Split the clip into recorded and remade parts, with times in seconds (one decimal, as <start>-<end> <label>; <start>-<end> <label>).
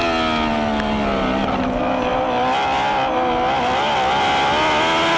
0.0-5.2 recorded